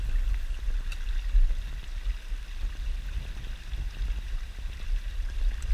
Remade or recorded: recorded